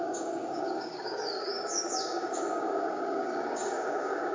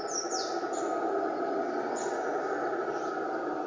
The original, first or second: second